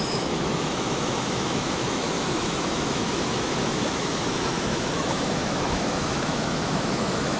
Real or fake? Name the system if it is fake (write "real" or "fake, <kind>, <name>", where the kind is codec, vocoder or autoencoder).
fake, autoencoder, DAC-VAE